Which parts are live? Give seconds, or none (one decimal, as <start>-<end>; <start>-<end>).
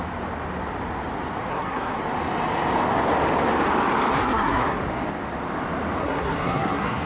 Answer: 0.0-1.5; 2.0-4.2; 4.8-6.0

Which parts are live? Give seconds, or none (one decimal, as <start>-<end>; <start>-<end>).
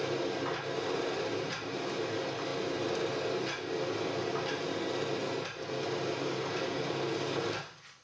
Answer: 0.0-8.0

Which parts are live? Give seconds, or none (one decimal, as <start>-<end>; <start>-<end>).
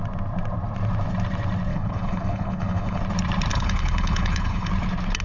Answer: 0.0-1.7; 3.0-3.5; 4.7-5.2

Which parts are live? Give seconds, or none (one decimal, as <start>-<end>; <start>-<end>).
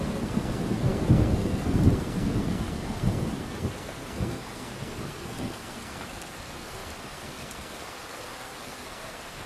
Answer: none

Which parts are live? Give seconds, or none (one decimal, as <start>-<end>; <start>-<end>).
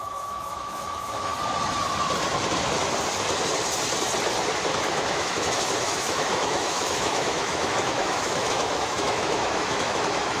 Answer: 1.3-4.8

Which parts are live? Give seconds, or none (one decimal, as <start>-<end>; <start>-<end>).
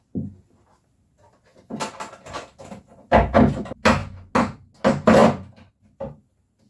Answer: 0.0-6.7